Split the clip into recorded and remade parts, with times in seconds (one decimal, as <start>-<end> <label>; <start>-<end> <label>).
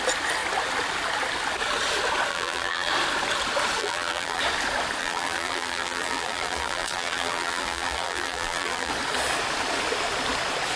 0.0-2.3 recorded; 2.3-2.9 remade; 2.9-3.8 recorded; 3.8-4.4 remade; 4.4-5.0 recorded; 5.0-8.9 remade; 8.9-10.8 recorded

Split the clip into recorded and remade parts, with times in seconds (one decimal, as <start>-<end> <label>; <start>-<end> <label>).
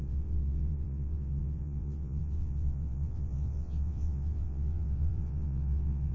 0.0-6.1 remade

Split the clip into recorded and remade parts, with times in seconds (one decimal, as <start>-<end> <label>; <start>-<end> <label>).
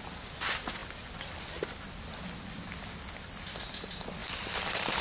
0.0-4.2 recorded; 4.2-5.0 remade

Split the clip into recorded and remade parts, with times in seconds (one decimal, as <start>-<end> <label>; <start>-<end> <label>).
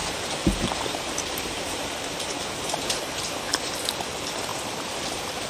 0.0-3.2 remade; 3.2-4.5 recorded; 4.5-5.5 remade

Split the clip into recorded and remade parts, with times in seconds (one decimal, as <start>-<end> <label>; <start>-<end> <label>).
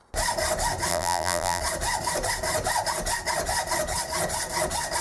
0.0-0.9 recorded; 0.9-1.6 remade; 1.6-5.0 recorded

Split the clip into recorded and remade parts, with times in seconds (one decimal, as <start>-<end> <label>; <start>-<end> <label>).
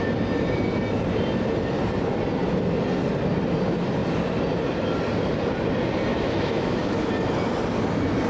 0.0-6.1 recorded; 6.1-7.1 remade; 7.1-8.3 recorded